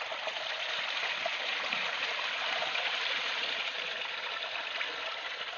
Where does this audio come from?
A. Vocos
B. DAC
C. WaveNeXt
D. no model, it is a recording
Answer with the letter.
D